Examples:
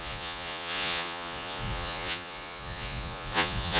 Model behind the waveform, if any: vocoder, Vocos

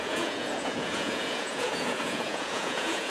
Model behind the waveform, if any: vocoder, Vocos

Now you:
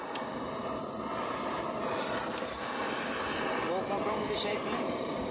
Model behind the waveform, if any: none